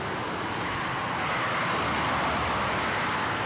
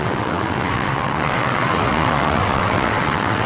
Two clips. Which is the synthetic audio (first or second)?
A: second